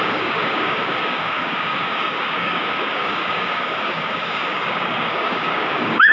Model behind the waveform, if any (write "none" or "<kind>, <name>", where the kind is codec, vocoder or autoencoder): codec, DAC